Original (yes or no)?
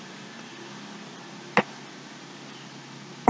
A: yes